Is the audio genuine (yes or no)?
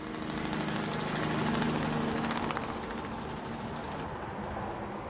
yes